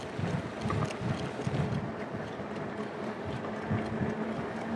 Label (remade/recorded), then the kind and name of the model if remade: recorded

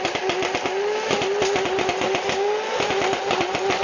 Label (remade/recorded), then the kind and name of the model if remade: recorded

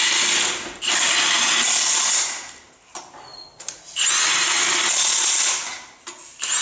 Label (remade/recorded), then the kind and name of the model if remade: recorded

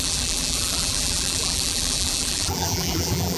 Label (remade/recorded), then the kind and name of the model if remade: remade, vocoder, BigVGAN v2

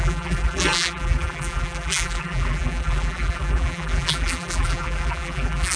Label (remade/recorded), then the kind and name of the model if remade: remade, vocoder, BigVGAN v2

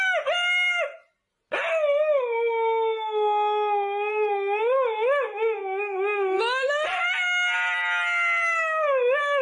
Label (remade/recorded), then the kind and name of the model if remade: recorded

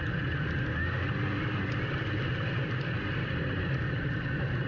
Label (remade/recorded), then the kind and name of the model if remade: recorded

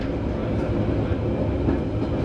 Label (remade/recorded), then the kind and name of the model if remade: recorded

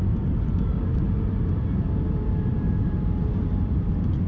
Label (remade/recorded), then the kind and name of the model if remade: remade, vocoder, BigVGAN v2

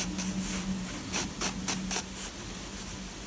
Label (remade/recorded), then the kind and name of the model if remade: recorded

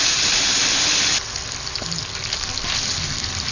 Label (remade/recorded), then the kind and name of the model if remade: recorded